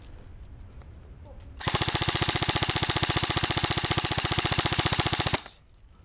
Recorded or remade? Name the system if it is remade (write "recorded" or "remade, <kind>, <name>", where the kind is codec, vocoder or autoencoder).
recorded